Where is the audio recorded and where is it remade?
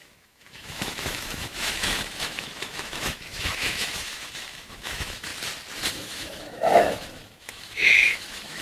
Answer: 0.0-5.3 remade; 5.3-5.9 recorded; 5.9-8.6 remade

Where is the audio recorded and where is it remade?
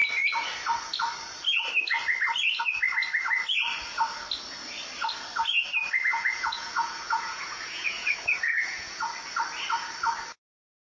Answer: 0.0-6.1 recorded; 6.1-9.0 remade; 9.0-10.8 recorded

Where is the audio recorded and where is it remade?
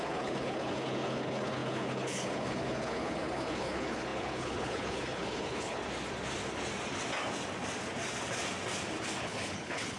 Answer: 0.0-5.8 remade; 5.8-9.2 recorded; 9.2-10.0 remade